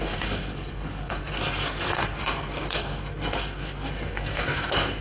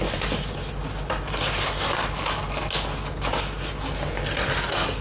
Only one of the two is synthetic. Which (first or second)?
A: first